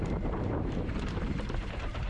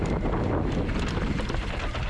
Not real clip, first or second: first